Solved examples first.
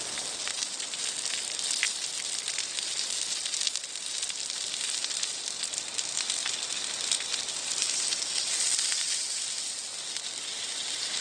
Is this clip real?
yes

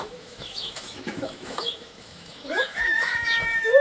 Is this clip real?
no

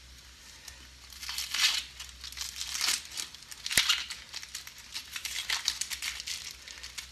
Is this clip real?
yes